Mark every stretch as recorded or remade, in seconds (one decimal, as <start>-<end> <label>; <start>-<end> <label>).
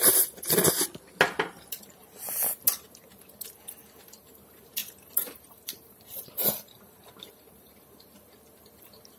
0.0-4.8 recorded; 4.8-7.7 remade; 7.7-9.2 recorded